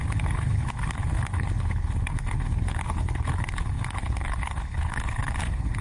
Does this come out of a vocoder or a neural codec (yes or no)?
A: yes